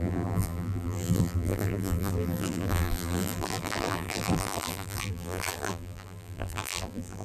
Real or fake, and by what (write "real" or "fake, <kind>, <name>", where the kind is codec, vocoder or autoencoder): fake, vocoder, BigVGAN v2